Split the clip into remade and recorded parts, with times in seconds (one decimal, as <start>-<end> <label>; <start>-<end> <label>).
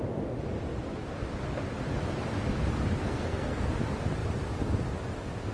0.0-3.0 recorded; 3.0-3.7 remade; 3.7-5.5 recorded